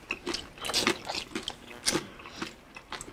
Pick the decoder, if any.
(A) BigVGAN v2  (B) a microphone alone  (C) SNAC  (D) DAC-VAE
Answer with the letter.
B